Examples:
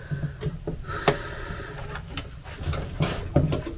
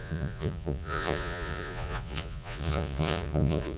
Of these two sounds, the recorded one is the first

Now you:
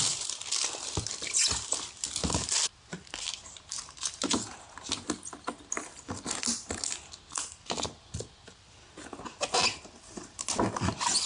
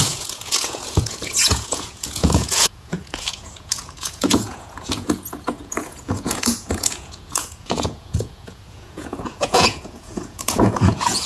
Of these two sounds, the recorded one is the first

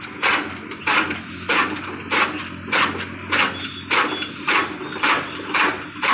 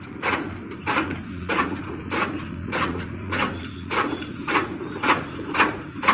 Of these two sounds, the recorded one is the first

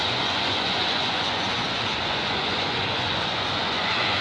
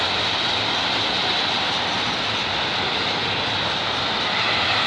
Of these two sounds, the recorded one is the second